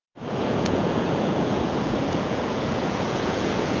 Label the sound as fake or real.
fake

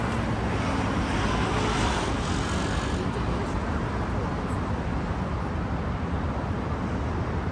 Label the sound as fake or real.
real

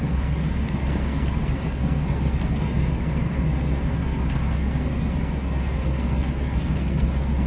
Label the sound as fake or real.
fake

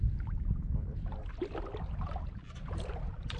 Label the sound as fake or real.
real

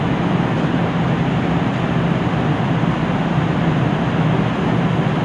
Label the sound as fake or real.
real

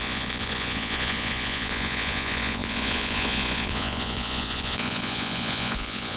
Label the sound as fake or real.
fake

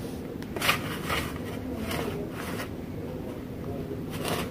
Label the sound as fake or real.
real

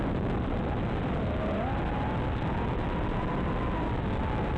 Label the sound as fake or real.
real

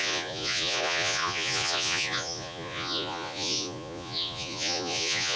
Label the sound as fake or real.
fake